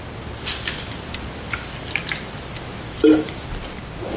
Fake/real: real